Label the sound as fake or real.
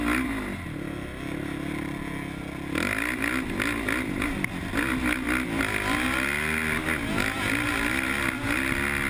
real